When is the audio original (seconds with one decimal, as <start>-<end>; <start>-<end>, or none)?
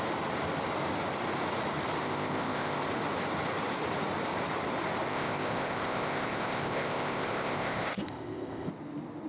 0.0-2.0; 2.8-5.1; 8.7-9.3